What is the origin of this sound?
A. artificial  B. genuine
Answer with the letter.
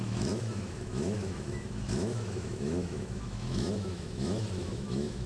A